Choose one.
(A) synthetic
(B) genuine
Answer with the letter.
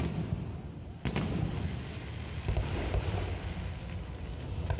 B